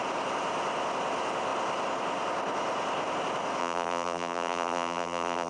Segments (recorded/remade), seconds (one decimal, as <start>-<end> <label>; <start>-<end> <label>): 0.0-3.6 recorded; 3.6-5.5 remade